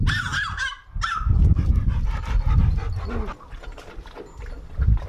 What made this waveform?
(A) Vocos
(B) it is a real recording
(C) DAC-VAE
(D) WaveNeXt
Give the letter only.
B